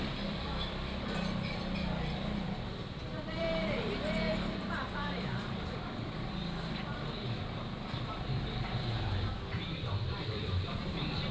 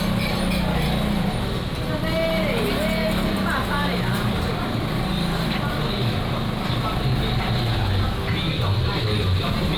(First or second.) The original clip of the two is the second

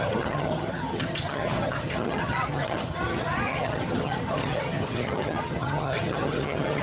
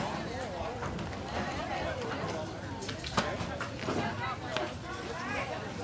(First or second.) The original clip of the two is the second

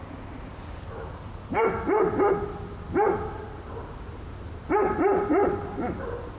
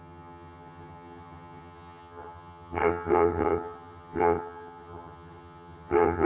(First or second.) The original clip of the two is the first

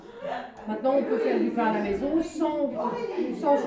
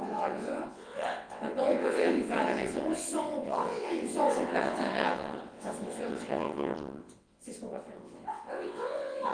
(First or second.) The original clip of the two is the first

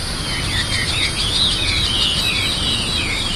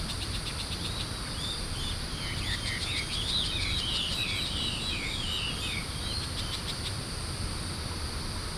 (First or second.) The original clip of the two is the first